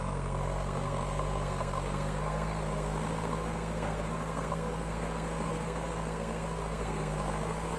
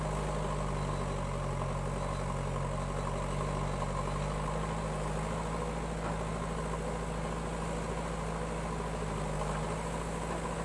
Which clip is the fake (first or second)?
first